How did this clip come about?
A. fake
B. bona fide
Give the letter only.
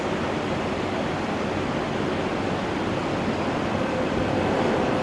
B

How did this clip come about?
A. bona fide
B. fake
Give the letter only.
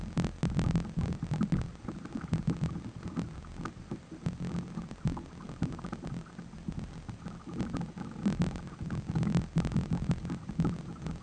A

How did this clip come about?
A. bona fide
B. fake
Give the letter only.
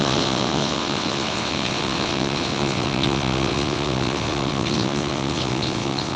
B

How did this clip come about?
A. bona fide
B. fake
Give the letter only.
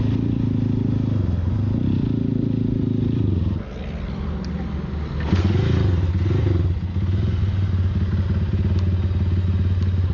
A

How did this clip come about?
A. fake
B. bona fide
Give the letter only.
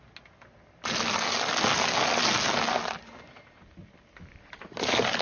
B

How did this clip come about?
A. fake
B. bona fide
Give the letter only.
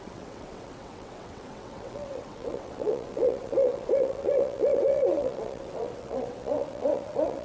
A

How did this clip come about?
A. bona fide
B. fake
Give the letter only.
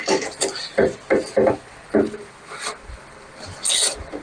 A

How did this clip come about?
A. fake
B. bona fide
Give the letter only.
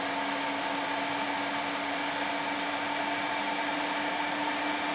B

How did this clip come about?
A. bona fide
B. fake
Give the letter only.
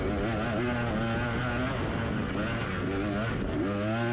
A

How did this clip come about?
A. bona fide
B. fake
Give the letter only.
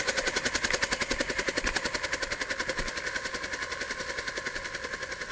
A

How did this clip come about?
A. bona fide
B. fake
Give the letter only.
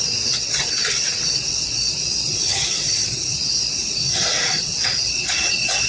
B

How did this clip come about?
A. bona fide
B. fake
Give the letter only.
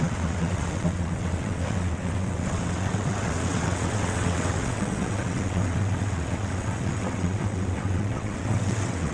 B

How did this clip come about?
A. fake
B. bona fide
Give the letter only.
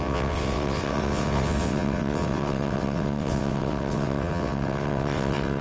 A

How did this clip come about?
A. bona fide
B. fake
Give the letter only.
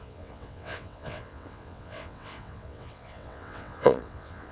B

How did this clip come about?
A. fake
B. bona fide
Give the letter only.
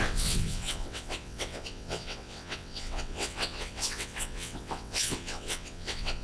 A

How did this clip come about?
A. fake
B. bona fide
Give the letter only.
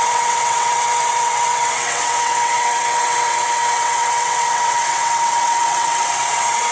A